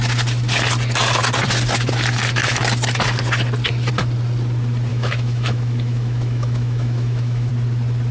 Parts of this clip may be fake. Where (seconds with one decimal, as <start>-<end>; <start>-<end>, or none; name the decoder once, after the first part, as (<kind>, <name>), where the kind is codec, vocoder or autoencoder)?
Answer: 4.9-7.5 (autoencoder, DAC-VAE)